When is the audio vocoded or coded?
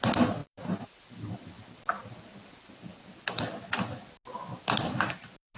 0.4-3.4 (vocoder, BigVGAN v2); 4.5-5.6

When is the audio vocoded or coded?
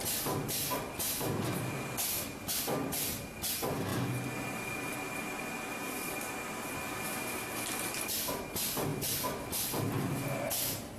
none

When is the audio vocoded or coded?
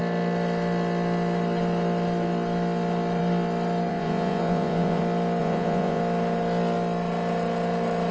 3.9-5.0 (vocoder, Vocos); 5.4-6.0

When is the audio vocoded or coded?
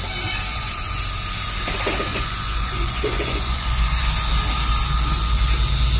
0.5-1.0 (vocoder, Vocos); 2.1-4.1